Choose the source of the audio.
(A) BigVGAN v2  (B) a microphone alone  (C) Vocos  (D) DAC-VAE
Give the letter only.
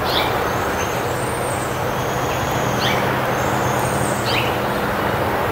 B